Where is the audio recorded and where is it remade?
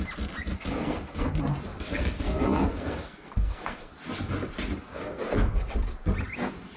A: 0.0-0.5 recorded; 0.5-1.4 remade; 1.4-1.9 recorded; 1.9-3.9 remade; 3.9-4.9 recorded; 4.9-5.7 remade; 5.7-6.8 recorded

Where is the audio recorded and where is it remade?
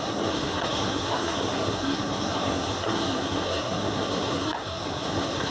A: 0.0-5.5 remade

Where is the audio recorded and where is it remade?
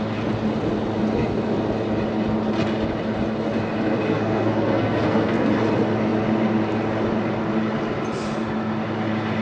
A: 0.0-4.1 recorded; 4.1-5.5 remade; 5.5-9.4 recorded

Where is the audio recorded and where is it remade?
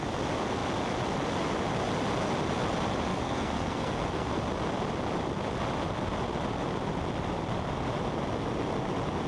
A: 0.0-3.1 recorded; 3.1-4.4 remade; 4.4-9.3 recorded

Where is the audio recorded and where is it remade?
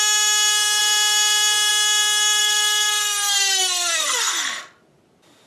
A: 0.0-2.4 recorded; 2.4-4.6 remade; 4.6-5.5 recorded